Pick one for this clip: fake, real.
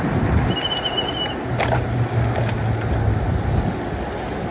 real